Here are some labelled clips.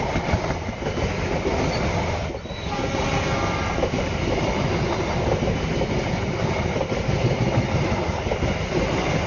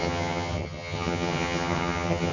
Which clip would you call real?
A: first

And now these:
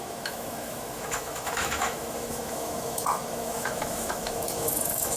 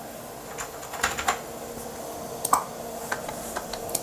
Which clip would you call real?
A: second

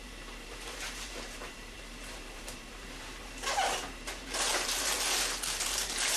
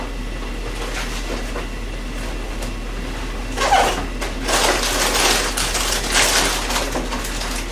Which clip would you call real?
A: second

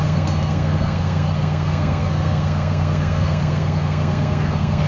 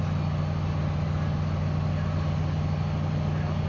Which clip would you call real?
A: second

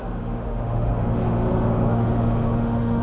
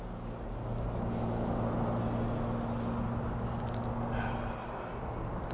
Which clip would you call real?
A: second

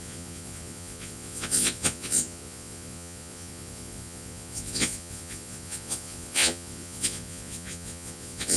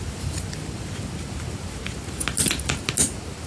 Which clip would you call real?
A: second